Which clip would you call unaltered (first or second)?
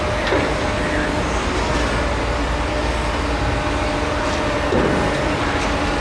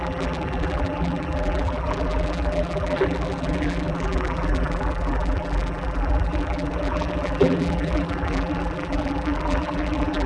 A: first